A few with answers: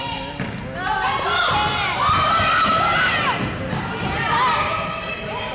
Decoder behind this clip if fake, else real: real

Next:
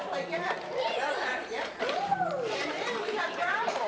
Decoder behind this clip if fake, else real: fake, vocoder, BigVGAN v2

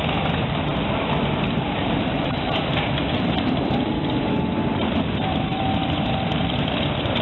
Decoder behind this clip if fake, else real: fake, vocoder, BigVGAN v2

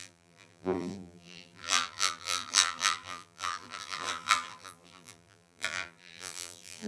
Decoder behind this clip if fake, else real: fake, vocoder, BigVGAN v2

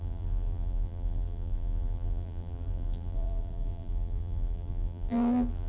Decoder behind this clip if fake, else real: fake, vocoder, BigVGAN v2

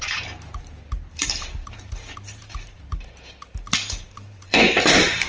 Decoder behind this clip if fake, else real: fake, vocoder, BigVGAN v2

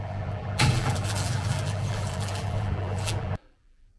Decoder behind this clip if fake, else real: fake, vocoder, BigVGAN v2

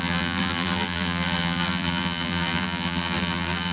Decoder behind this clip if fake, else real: fake, vocoder, BigVGAN v2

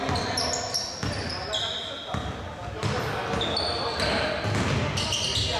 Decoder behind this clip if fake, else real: real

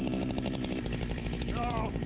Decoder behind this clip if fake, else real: fake, vocoder, BigVGAN v2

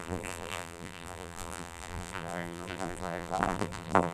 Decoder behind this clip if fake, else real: fake, vocoder, BigVGAN v2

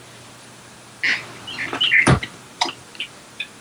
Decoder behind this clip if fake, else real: fake, vocoder, BigVGAN v2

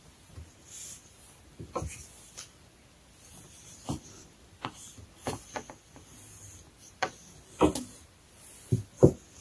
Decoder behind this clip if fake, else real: real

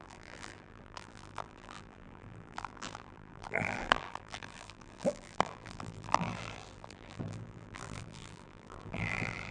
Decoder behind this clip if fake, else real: fake, vocoder, BigVGAN v2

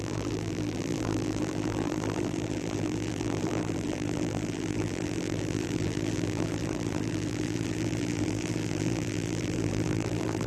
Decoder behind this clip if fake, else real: fake, vocoder, BigVGAN v2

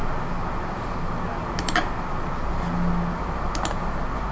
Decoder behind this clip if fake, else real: real